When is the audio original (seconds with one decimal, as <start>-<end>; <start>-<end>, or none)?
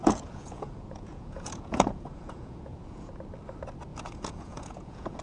3.1-3.9